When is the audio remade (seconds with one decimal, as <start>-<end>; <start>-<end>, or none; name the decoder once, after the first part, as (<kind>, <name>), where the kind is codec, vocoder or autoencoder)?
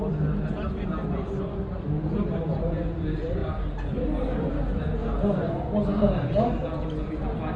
none